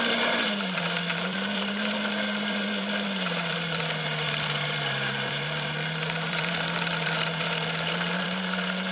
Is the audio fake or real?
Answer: fake